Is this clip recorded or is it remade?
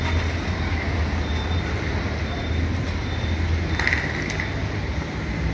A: recorded